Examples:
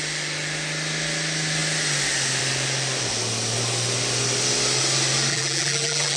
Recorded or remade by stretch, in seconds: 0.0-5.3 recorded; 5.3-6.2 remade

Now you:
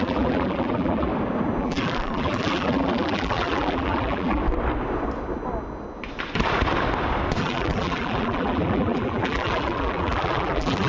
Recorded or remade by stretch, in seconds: 0.0-1.1 remade; 1.1-1.6 recorded; 1.6-4.4 remade; 4.4-7.4 recorded; 7.4-10.9 remade